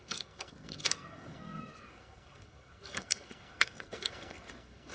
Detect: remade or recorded remade